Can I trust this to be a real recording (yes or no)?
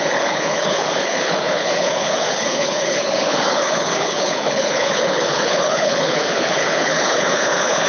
no